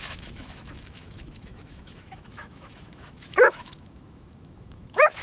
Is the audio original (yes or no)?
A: no